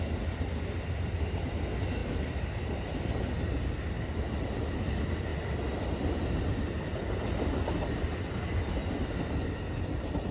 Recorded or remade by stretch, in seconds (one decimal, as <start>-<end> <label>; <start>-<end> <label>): 0.0-10.3 recorded